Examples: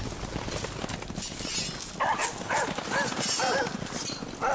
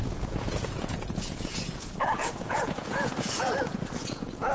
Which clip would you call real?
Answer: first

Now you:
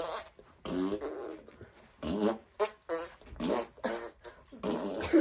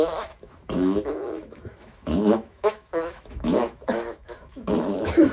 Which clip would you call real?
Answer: first